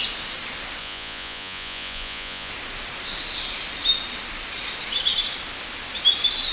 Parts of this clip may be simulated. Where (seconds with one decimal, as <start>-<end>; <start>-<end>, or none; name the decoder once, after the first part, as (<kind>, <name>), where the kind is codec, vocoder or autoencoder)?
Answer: 0.8-2.5 (vocoder, Vocos)